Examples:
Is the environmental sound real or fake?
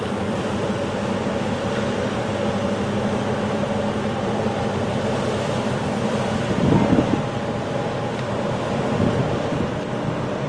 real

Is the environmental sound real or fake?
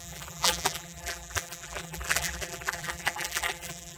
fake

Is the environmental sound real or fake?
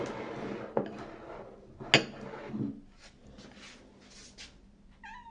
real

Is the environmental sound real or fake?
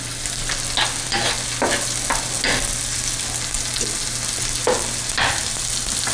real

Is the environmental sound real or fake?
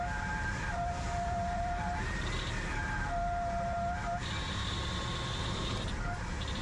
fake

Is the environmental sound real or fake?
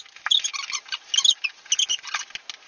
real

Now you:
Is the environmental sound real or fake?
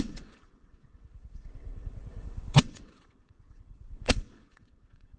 fake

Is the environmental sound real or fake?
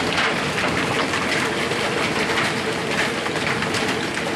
real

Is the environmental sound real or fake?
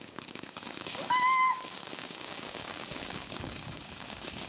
fake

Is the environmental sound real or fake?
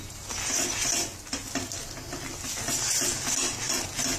real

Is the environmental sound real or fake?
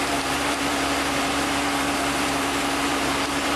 fake